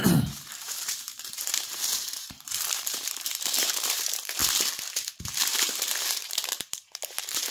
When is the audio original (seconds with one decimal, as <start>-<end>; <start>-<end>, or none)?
4.4-5.3